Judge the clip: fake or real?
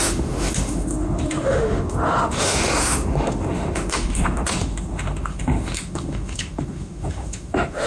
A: fake